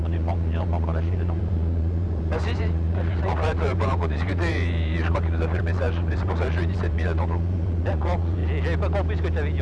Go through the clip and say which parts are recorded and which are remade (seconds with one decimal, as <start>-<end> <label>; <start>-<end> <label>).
0.0-8.4 remade; 8.4-9.6 recorded